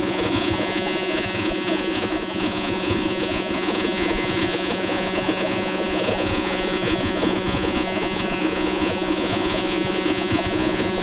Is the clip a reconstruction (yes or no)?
yes